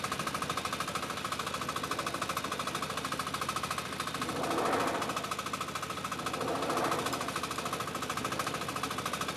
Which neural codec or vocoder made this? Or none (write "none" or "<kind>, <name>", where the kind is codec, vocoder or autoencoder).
none